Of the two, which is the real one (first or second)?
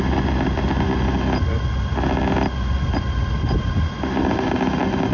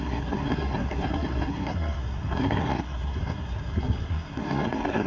first